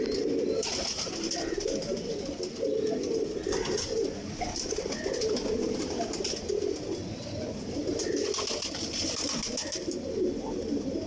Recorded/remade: recorded